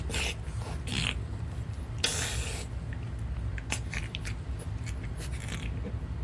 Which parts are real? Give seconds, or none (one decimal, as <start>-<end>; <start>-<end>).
0.0-6.2